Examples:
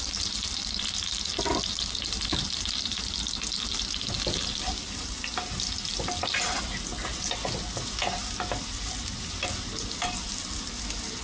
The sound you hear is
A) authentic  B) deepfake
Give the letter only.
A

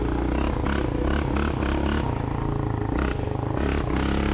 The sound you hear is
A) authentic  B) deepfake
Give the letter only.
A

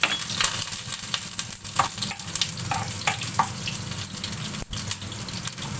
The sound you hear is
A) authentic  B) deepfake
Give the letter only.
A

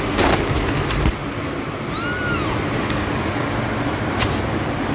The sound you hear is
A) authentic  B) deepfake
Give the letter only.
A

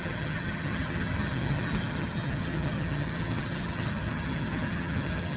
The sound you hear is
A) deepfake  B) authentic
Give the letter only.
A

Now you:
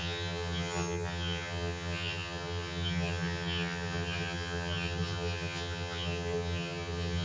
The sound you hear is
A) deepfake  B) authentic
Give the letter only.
A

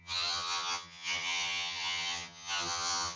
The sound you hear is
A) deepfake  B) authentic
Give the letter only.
A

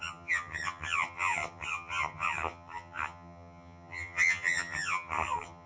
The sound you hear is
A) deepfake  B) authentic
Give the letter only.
A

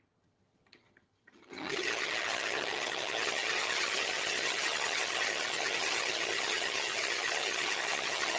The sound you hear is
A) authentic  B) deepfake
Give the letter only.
B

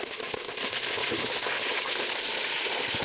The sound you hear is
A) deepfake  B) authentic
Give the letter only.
B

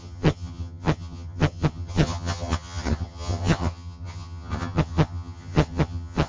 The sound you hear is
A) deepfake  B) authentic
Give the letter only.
A